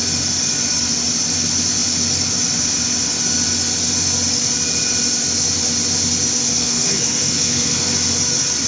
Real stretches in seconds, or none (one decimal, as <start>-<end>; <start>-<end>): 0.0-6.6; 7.9-8.7